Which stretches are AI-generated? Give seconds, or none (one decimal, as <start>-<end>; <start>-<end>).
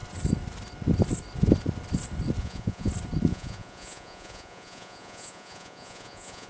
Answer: 2.4-2.9; 3.3-6.5